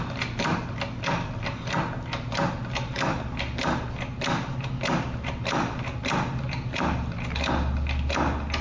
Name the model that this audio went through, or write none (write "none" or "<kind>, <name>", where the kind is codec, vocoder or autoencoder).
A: none